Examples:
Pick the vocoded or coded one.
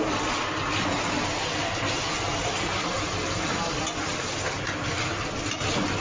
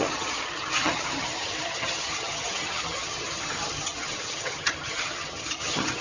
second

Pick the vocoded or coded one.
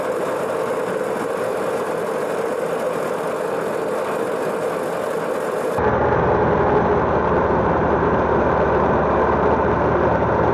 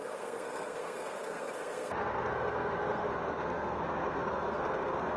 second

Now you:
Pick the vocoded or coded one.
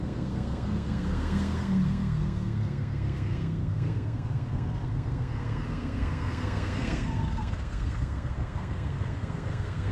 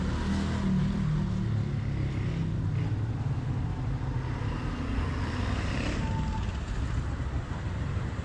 first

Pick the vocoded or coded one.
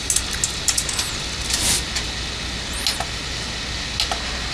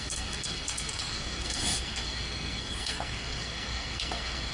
second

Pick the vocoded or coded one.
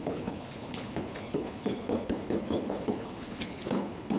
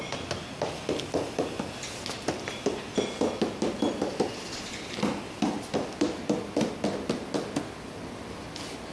first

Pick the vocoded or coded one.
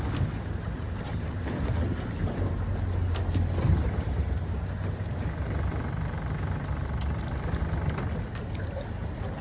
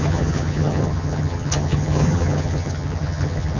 second